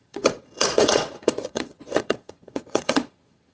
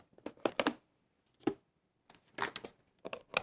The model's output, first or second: first